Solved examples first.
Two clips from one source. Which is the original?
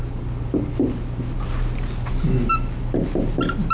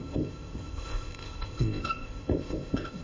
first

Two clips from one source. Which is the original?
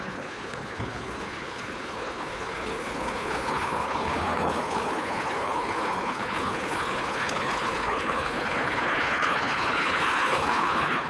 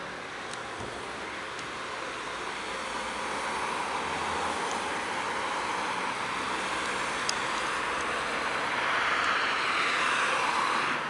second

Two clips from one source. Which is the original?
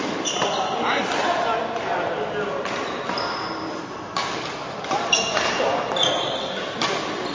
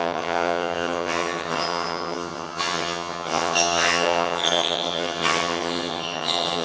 first